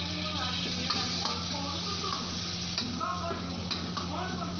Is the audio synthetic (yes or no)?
no